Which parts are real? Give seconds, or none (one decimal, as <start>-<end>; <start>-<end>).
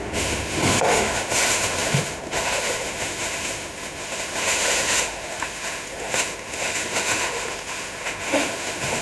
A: none